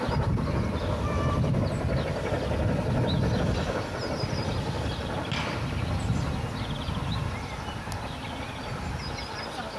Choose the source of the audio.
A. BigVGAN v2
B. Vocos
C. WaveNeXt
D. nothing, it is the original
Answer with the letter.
D